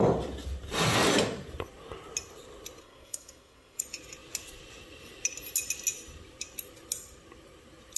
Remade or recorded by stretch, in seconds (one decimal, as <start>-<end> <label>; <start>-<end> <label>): 0.0-2.8 recorded; 2.8-3.8 remade; 3.8-8.0 recorded